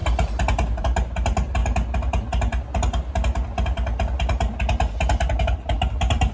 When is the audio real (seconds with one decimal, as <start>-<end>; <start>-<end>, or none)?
0.0-0.8; 1.6-5.4